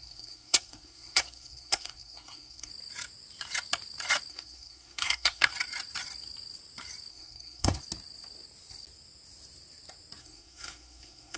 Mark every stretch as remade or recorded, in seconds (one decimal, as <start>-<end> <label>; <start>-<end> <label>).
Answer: 0.0-2.7 remade; 2.7-4.3 recorded; 4.3-5.5 remade; 5.5-7.1 recorded; 7.1-7.8 remade; 7.8-10.2 recorded; 10.2-11.4 remade